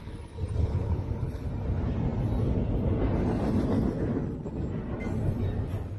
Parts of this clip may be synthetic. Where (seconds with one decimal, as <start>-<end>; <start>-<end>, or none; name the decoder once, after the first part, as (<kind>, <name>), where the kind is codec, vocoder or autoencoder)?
0.6-1.5 (codec, HILCodec)